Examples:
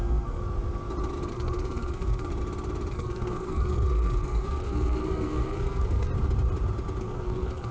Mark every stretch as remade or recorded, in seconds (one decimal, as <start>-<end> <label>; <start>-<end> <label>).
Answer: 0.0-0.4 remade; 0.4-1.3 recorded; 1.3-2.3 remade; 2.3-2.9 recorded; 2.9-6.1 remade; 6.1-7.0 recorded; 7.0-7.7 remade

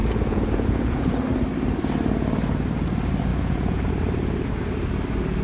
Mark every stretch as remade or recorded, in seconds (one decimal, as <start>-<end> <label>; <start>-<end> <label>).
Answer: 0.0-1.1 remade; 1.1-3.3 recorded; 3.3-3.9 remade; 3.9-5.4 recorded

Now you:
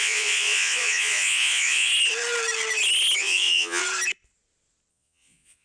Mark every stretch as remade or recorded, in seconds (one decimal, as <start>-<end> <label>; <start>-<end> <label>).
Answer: 0.0-1.9 remade; 1.9-3.2 recorded; 3.2-3.8 remade; 3.8-4.9 recorded; 4.9-5.6 remade